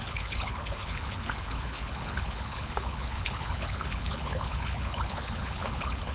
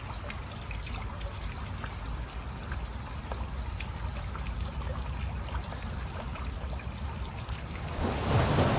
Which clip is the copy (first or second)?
first